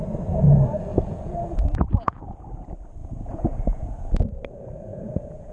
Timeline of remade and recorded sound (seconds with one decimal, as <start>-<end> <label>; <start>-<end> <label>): 0.0-0.9 recorded; 0.9-2.4 remade; 2.4-3.0 recorded; 3.0-4.2 remade; 4.2-4.9 recorded; 4.9-5.5 remade